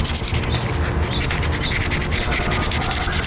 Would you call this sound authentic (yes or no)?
yes